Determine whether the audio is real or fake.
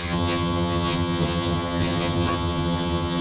fake